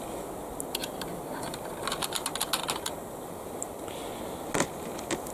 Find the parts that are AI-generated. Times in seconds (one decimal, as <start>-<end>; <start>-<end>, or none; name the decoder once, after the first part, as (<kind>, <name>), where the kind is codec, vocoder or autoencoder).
0.8-1.7 (vocoder, BigVGAN v2)

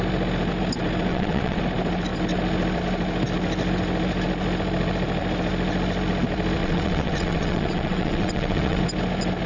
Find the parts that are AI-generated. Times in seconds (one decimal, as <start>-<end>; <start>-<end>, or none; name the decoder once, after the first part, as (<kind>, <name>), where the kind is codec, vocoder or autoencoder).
1.1-1.6 (vocoder, WaveNeXt); 6.6-8.8

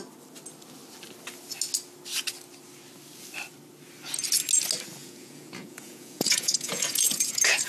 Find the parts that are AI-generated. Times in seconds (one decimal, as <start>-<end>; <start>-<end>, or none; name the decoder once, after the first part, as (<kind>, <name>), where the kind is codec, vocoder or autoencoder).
5.0-7.7 (vocoder, Vocos)

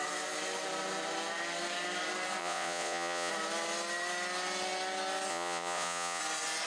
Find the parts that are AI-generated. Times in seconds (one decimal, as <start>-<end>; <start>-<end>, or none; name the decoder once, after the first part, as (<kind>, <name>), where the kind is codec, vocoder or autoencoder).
2.4-3.3 (vocoder, Vocos); 5.3-6.2

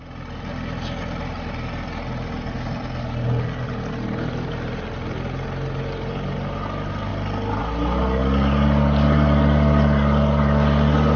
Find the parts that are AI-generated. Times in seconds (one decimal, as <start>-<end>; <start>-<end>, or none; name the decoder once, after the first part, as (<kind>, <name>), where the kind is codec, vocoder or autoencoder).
none